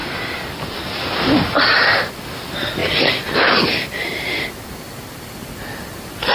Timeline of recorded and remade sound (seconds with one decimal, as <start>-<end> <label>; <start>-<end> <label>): 0.0-6.3 recorded